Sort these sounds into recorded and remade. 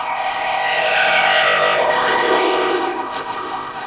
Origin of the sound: remade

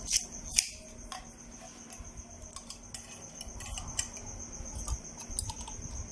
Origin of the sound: recorded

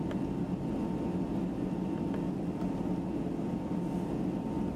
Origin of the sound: recorded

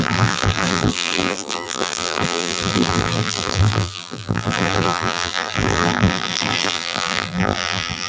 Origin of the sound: remade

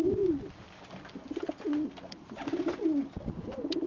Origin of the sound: recorded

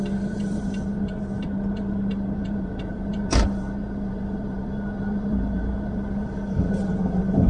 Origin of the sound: remade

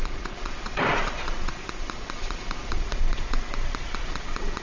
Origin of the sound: remade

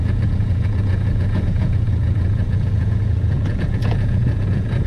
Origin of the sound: remade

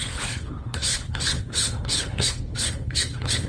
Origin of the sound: remade